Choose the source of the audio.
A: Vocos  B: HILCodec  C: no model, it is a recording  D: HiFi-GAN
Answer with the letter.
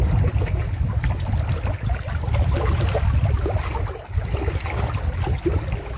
C